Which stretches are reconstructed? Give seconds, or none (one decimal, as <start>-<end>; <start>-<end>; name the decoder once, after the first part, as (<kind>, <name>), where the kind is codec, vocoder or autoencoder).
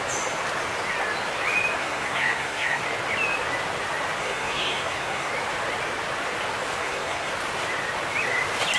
1.8-2.8 (codec, SNAC); 4.2-5.3; 6.8-7.3